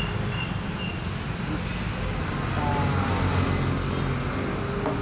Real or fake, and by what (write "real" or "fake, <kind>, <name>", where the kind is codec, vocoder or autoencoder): real